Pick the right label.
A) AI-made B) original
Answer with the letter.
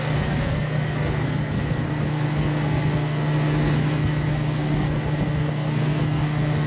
A